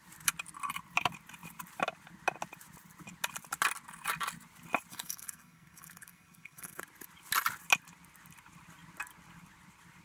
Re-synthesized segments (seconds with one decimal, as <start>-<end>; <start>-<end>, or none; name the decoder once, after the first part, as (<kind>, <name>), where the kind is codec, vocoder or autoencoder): 4.9-6.8 (codec, SNAC)